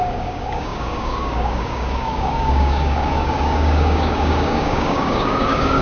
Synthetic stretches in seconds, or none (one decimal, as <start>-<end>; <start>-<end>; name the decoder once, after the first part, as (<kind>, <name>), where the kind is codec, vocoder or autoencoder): 0.0-5.8 (codec, DAC)